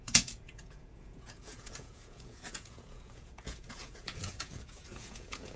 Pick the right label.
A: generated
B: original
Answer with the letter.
A